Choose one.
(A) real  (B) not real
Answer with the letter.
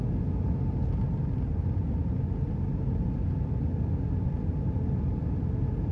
A